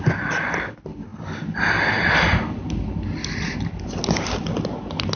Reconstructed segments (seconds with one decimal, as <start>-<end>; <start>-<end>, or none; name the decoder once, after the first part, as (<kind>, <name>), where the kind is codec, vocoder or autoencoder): none